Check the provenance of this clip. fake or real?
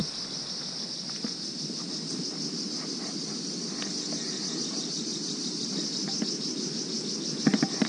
real